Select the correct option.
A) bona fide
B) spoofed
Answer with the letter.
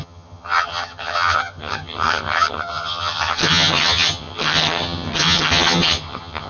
B